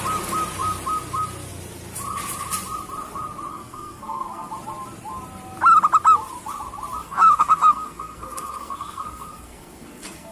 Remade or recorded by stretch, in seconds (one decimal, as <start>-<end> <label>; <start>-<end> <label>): 0.0-3.5 recorded; 3.5-4.5 remade; 4.5-7.0 recorded; 7.0-10.3 remade